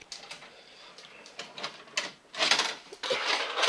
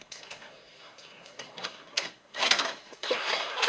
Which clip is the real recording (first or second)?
first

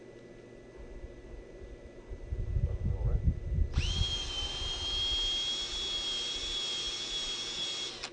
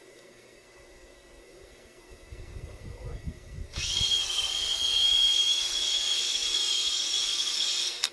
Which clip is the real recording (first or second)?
first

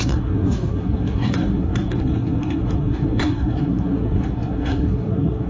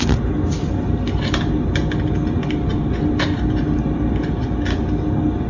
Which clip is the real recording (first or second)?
second